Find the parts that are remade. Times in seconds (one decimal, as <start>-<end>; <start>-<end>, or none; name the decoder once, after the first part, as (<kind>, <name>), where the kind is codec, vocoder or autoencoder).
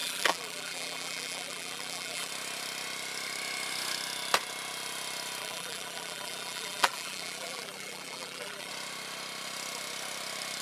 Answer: 0.0-2.3 (vocoder, BigVGAN v2); 5.4-8.7